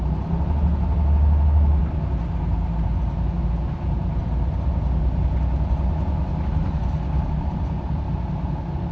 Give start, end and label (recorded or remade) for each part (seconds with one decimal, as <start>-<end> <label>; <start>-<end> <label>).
0.0-8.9 recorded